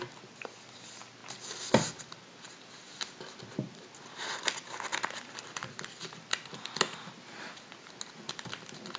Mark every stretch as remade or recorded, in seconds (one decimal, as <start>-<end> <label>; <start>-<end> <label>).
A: 0.0-9.0 recorded